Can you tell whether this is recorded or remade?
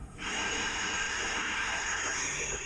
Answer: remade